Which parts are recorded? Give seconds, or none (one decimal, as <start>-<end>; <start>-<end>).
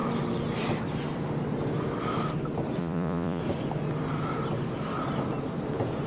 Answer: 0.0-2.8; 3.4-6.1